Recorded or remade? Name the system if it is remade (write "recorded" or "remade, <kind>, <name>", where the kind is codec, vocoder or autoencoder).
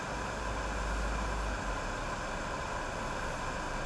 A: recorded